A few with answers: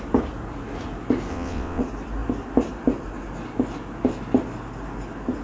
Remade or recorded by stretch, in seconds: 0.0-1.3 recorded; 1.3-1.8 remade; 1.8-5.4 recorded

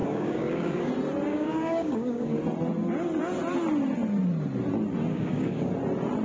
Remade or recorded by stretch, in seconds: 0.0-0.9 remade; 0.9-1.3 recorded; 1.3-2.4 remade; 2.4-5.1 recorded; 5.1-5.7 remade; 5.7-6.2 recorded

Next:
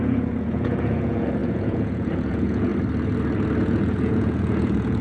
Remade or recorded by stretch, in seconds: 0.0-2.7 remade; 2.7-3.6 recorded; 3.6-5.0 remade

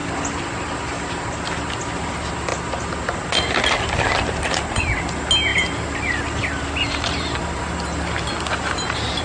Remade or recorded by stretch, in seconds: 0.0-1.1 remade; 1.1-5.5 recorded; 5.5-9.2 remade